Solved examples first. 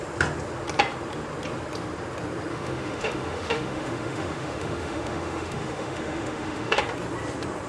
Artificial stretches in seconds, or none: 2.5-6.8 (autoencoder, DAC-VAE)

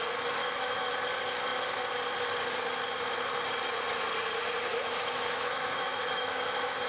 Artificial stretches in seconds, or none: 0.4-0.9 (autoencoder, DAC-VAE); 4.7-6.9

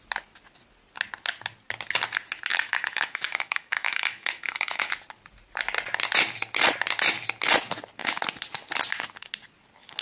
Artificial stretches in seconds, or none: 2.5-4.9 (autoencoder, DAC-VAE)

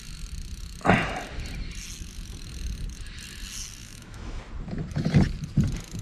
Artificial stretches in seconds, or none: 3.8-4.4 (autoencoder, DAC-VAE)

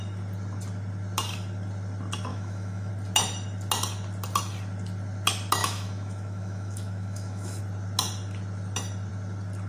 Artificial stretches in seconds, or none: 2.3-2.9 (autoencoder, DAC-VAE); 5.6-7.6

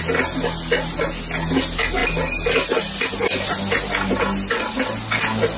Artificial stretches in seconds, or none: none

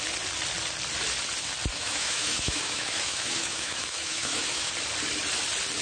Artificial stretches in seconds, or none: 1.7-4.7 (autoencoder, DAC-VAE)

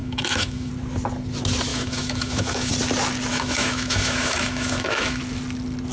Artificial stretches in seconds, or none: 0.0-0.7 (autoencoder, DAC-VAE); 1.7-2.7; 3.3-5.2